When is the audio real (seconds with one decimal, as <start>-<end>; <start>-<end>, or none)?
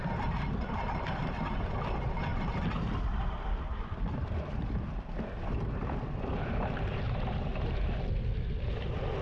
7.5-8.5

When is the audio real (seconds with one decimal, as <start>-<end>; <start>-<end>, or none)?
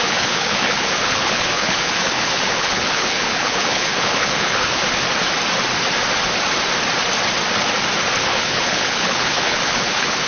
4.8-8.2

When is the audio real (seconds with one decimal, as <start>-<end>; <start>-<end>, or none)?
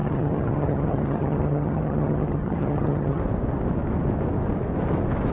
3.2-5.3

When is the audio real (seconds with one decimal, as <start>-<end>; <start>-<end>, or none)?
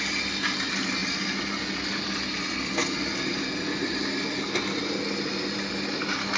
0.0-6.4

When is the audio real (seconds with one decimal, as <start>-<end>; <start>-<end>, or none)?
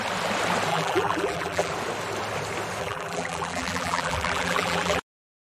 0.0-0.7; 1.7-2.8; 5.0-5.5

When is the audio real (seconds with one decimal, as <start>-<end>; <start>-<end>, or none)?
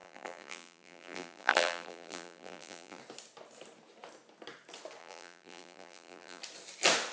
3.0-5.0; 6.4-7.1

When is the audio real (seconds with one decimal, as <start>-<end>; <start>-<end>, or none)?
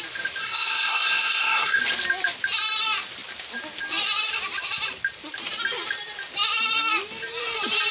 0.0-0.4; 1.8-7.9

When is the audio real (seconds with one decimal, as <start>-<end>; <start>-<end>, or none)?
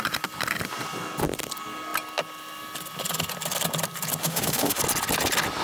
0.0-4.2; 4.8-5.6